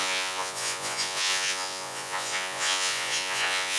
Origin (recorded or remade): remade